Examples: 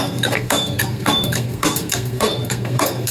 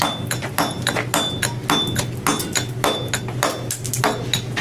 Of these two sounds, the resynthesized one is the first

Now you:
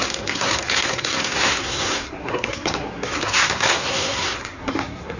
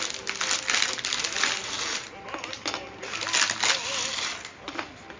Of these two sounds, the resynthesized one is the first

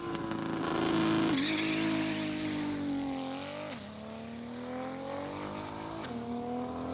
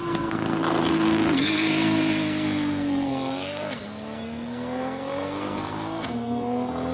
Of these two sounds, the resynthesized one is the second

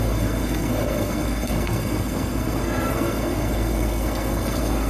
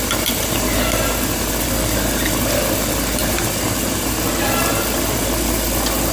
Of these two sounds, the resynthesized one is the first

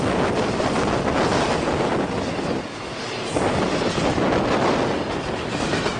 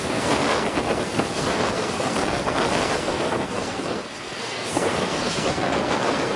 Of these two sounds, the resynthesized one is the second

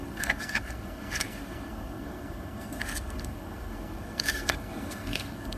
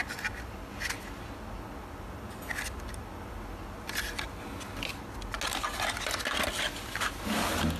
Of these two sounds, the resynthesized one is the first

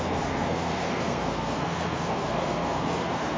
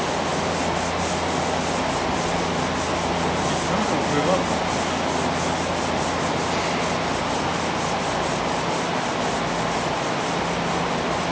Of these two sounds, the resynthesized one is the first